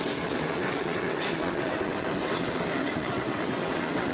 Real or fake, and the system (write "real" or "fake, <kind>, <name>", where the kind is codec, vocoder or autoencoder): fake, vocoder, WaveNeXt